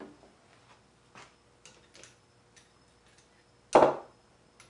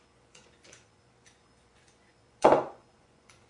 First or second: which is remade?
second